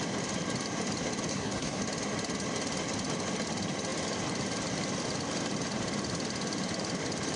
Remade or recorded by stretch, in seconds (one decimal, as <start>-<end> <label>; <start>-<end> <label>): 0.0-1.3 recorded; 1.3-1.8 remade; 1.8-7.4 recorded